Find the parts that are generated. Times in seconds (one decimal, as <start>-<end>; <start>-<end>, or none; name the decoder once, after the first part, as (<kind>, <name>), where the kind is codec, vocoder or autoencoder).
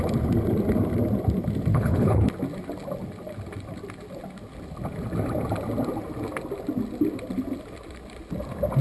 1.7-2.3 (codec, HILCodec)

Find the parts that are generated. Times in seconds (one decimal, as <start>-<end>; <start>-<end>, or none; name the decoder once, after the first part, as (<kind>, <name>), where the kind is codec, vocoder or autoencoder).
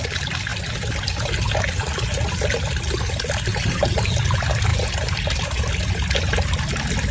3.5-4.1 (vocoder, BigVGAN v2); 4.7-5.7